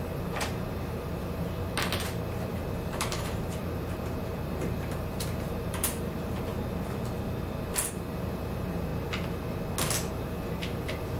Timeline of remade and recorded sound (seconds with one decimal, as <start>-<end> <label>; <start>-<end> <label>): 0.0-6.5 remade; 6.5-7.9 recorded; 7.9-8.9 remade; 8.9-10.1 recorded; 10.1-11.2 remade